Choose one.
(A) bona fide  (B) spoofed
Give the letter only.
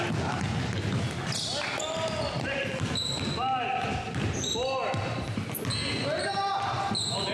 A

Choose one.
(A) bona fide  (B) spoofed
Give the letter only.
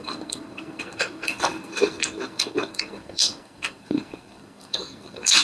B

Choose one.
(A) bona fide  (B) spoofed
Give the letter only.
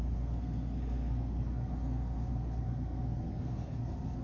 B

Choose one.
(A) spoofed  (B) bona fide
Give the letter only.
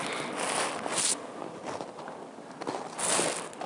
B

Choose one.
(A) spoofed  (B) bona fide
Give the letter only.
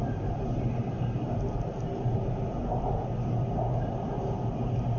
B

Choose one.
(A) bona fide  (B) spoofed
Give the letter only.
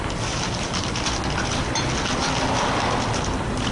A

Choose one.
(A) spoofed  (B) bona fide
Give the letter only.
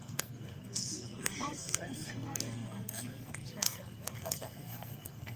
A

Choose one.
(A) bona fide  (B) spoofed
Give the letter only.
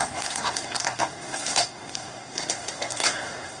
B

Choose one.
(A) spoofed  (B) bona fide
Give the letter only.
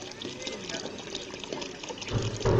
B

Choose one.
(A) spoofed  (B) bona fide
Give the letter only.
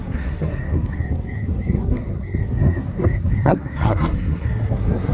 A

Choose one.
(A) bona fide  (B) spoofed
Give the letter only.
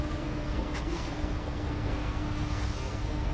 B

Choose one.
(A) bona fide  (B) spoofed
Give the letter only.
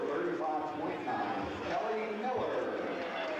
A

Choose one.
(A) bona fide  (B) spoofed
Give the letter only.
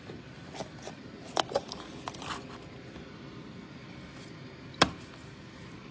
A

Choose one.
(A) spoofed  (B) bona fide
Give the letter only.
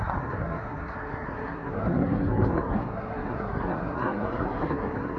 A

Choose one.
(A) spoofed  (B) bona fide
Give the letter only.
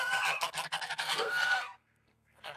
A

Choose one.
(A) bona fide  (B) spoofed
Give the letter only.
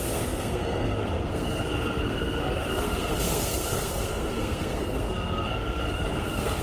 B